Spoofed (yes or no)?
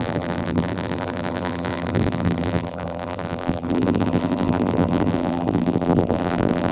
yes